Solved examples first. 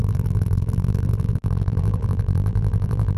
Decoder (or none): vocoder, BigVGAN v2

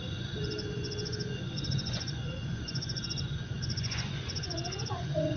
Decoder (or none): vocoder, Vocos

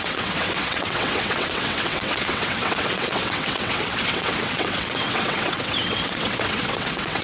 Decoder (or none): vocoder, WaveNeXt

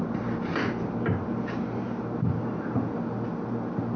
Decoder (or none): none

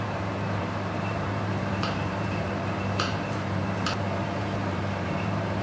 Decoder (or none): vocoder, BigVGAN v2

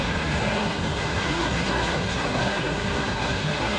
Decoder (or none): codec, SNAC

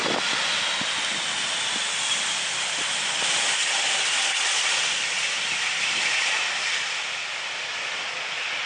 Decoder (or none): none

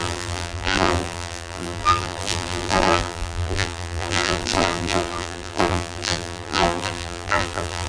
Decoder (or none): vocoder, BigVGAN v2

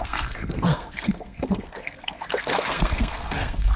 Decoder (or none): codec, SNAC